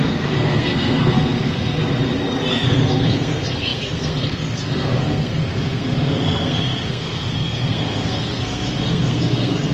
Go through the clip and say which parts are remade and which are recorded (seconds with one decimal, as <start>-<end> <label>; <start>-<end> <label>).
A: 0.0-1.8 remade; 1.8-2.5 recorded; 2.5-9.7 remade